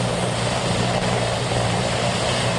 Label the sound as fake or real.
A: fake